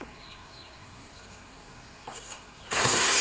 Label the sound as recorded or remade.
remade